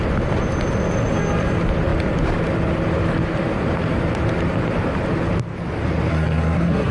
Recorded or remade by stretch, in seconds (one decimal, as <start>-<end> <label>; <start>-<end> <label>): 0.0-6.1 recorded; 6.1-6.9 remade